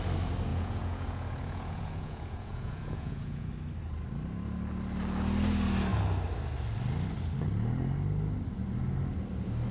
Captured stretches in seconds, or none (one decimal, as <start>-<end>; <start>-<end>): 0.0-0.5; 3.5-9.7